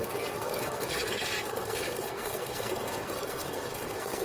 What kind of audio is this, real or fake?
fake